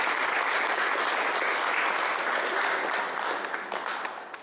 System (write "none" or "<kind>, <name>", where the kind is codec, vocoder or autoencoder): none